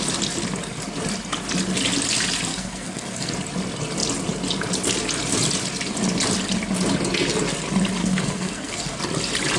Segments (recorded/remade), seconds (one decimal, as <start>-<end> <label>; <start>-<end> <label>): 0.0-2.5 recorded; 2.5-3.3 remade; 3.3-8.0 recorded; 8.0-9.0 remade; 9.0-9.6 recorded